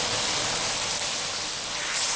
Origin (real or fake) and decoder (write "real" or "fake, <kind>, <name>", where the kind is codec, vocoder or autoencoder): real